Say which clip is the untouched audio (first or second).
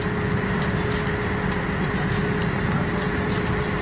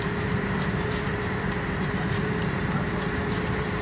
first